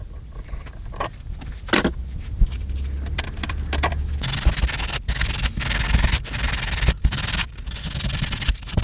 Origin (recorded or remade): recorded